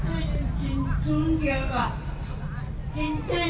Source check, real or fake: real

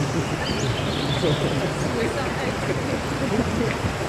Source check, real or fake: fake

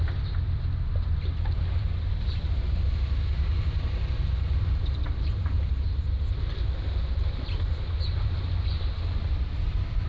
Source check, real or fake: fake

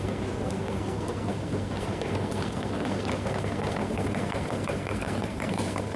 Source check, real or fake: fake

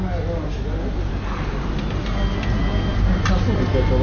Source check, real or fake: real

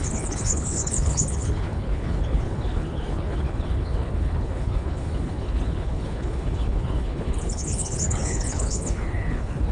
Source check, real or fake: fake